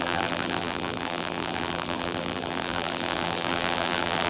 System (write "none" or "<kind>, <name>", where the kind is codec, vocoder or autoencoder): vocoder, BigVGAN v2